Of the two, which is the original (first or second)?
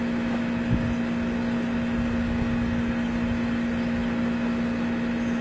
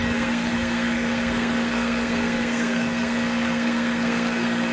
first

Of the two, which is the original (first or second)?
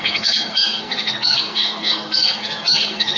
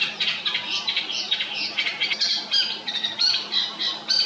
second